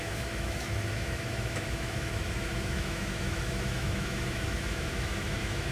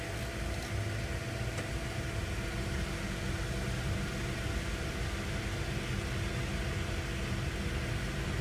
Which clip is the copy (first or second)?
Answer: first